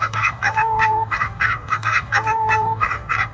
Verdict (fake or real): fake